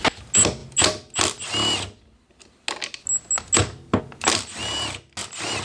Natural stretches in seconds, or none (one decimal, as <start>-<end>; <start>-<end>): 0.0-5.6